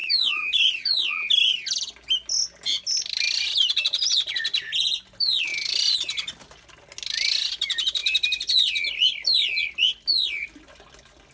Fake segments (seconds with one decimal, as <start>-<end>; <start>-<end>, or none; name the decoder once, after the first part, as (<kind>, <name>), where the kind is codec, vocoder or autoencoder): 0.0-0.6 (autoencoder, DAC-VAE)